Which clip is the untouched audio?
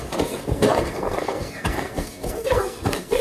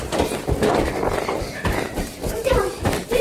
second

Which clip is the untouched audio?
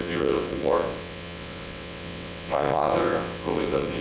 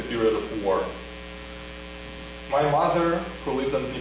second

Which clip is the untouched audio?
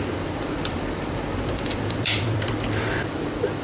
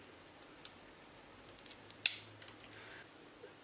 second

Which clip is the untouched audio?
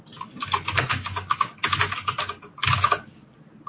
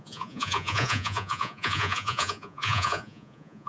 first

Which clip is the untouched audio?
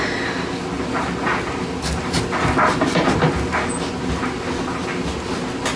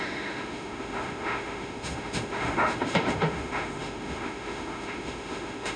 first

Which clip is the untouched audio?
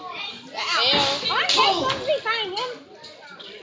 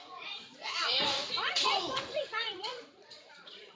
first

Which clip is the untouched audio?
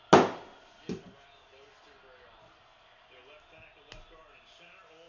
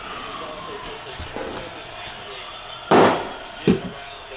first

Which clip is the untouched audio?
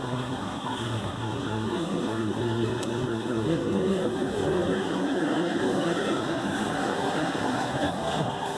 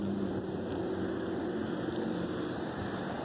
second